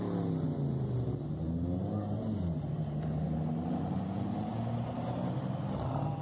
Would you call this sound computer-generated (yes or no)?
no